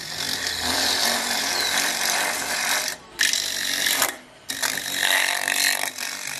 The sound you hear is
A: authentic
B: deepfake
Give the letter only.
B